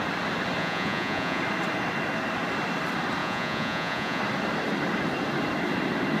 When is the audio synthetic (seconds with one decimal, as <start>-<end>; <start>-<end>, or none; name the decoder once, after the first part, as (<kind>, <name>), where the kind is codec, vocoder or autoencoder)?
0.6-1.4 (vocoder, Vocos); 3.2-4.2